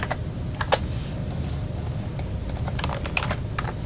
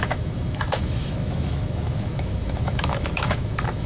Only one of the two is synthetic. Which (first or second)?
second